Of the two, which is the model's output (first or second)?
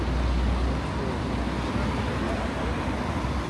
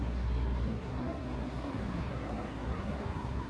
second